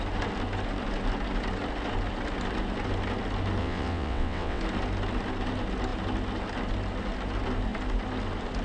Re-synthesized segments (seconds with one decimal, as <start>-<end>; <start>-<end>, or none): 3.6-4.6